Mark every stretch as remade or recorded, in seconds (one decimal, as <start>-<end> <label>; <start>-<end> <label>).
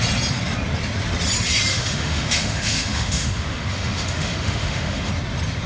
0.0-1.7 recorded; 1.7-5.1 remade; 5.1-5.7 recorded